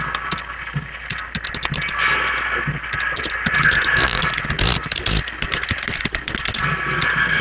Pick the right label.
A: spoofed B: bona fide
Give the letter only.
B